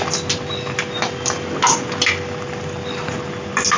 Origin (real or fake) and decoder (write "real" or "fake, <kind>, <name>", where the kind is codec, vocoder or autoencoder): real